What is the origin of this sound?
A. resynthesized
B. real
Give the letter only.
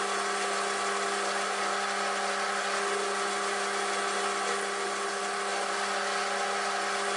B